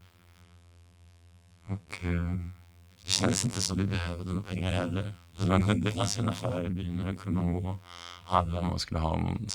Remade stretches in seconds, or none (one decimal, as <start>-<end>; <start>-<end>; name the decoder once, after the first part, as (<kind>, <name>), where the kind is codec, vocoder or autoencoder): 0.0-8.7 (vocoder, BigVGAN v2)